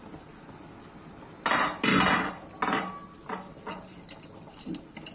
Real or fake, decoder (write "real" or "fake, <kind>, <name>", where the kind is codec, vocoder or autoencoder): real